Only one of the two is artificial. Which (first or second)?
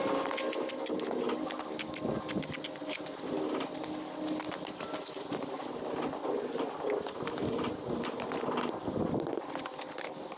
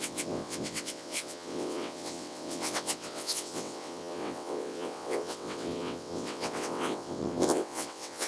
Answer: second